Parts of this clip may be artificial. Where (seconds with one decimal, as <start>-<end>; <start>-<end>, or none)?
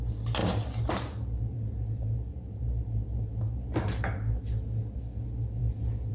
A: 0.4-0.9; 1.5-5.0